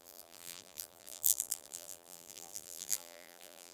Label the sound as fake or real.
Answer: fake